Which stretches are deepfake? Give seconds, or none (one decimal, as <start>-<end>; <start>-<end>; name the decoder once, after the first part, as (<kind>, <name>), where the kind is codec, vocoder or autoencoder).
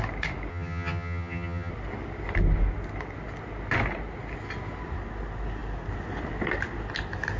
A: 0.5-1.7 (vocoder, HiFi-GAN)